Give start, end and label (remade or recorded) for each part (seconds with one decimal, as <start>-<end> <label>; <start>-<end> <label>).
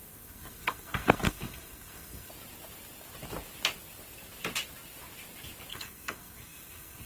0.0-2.3 remade; 2.3-5.7 recorded; 5.7-7.1 remade